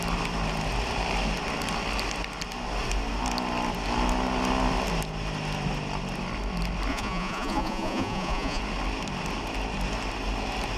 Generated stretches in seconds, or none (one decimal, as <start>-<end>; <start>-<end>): 6.9-8.6